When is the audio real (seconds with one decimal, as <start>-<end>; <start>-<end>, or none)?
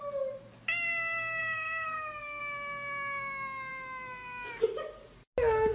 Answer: 0.0-1.4; 2.4-5.7